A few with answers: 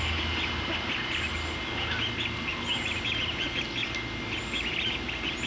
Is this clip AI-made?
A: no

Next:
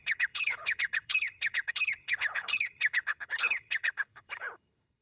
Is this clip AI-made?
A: yes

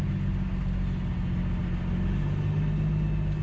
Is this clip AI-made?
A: no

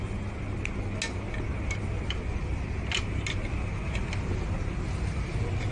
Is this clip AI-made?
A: no